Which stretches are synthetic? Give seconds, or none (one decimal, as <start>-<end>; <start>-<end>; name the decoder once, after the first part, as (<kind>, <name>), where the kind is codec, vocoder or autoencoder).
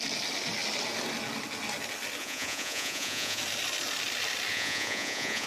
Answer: 2.2-3.4 (vocoder, Vocos); 4.5-5.5